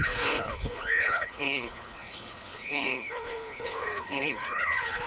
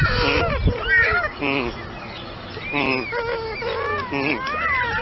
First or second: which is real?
second